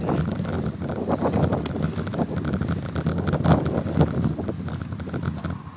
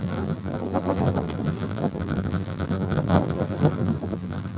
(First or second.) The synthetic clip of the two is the second